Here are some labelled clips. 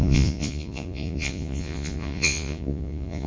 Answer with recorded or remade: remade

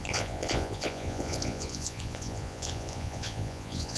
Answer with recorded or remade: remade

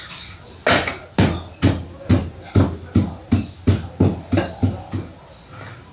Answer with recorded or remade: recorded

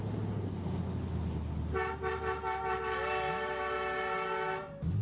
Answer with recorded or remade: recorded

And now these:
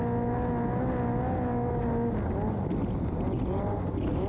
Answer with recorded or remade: recorded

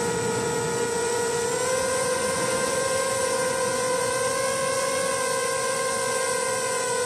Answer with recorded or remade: remade